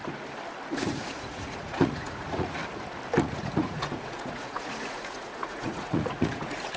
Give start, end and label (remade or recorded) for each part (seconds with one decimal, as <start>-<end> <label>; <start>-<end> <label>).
0.0-0.8 recorded; 0.8-2.6 remade; 2.6-3.2 recorded; 3.2-6.8 remade